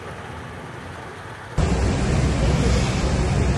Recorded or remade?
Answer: recorded